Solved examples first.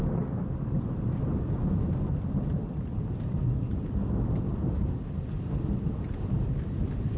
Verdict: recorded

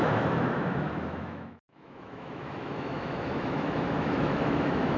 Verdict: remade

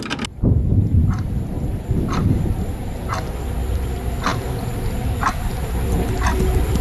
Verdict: recorded